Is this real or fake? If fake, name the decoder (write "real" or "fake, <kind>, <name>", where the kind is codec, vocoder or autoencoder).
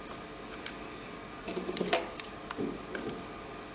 real